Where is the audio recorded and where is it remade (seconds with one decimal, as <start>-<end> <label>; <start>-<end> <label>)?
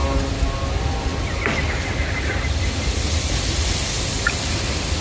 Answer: 0.0-5.0 recorded